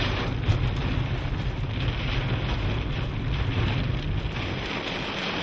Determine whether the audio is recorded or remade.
recorded